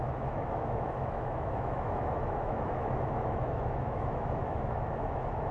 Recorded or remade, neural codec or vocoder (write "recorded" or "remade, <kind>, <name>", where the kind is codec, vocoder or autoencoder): remade, autoencoder, DAC-VAE